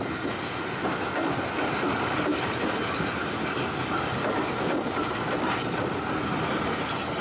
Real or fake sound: real